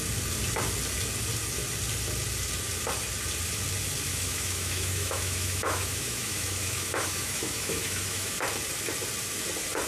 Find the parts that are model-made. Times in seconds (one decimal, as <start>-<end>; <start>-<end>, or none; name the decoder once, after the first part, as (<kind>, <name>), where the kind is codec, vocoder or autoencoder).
4.1-8.4 (autoencoder, DAC-VAE)